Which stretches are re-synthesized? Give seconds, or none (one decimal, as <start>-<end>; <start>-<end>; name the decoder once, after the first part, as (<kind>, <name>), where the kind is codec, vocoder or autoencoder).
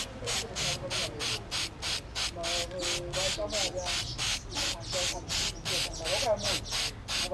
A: none